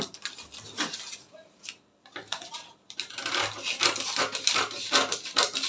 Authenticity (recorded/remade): recorded